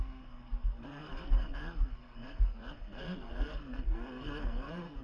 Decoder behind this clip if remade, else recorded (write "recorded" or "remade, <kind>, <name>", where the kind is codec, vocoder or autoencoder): remade, codec, SNAC